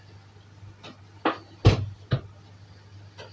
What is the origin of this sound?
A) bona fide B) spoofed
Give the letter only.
A